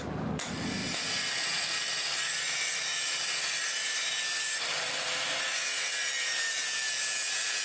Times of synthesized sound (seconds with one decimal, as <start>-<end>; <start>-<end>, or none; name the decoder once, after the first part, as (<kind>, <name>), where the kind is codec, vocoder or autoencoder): 0.8-5.4 (vocoder, BigVGAN v2)

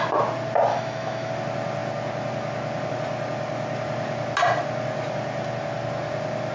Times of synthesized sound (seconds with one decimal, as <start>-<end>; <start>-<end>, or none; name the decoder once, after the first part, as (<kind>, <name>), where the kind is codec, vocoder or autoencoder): 0.7-1.3 (autoencoder, DAC-VAE)